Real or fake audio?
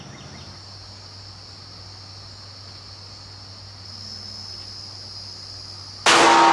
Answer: real